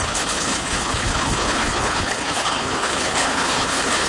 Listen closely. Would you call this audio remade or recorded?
remade